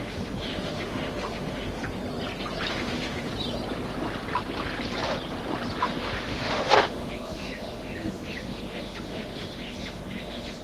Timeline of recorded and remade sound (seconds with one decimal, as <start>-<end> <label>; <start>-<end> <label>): 0.0-1.8 remade; 1.8-2.7 recorded; 2.7-3.3 remade; 3.3-5.8 recorded; 5.8-10.6 remade